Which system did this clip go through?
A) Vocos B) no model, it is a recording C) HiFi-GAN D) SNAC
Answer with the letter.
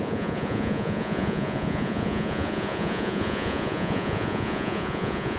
A